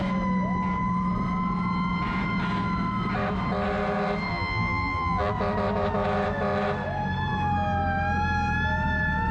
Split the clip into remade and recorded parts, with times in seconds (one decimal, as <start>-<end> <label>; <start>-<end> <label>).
0.0-4.3 recorded; 4.3-5.3 remade; 5.3-9.3 recorded

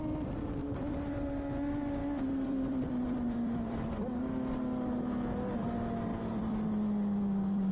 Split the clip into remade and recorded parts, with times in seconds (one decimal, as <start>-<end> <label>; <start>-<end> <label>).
0.0-0.6 recorded; 0.6-1.3 remade; 1.3-2.0 recorded; 2.0-3.9 remade; 3.9-6.1 recorded; 6.1-7.7 remade